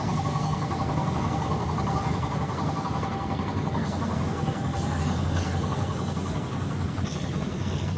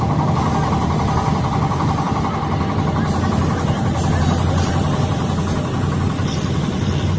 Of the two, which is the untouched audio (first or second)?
second